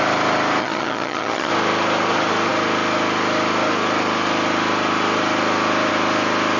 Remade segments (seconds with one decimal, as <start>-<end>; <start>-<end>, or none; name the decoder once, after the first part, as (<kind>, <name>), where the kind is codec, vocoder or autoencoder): 0.6-1.5 (vocoder, HiFi-GAN)